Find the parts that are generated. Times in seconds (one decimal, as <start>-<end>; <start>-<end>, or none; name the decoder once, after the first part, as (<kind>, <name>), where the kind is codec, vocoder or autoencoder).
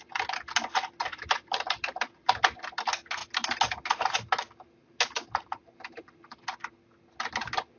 1.1-2.3 (vocoder, BigVGAN v2)